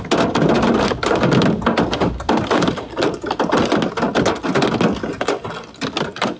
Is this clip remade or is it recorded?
recorded